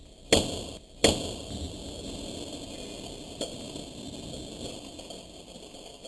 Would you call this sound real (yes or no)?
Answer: yes